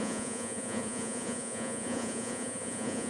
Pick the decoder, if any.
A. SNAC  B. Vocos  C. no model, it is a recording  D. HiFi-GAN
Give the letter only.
B